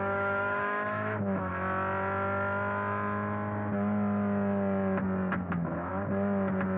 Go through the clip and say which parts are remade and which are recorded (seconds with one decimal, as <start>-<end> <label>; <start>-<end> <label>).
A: 0.0-1.5 remade; 1.5-5.5 recorded; 5.5-5.9 remade; 5.9-6.8 recorded